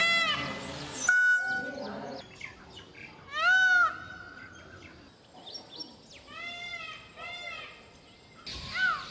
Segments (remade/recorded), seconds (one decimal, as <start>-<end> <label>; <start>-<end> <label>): 0.0-9.1 recorded